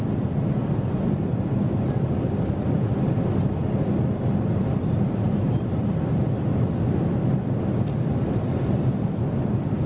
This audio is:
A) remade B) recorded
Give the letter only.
B